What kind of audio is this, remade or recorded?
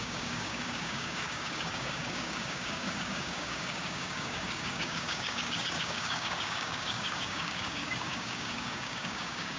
remade